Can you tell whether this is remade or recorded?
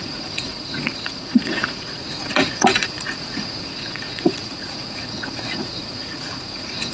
remade